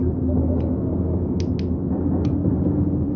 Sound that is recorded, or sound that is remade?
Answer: recorded